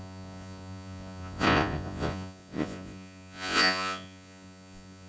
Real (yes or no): no